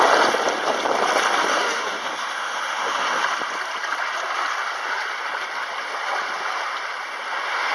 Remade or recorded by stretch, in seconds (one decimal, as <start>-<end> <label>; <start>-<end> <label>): 0.0-1.5 recorded; 1.5-3.2 remade; 3.2-7.7 recorded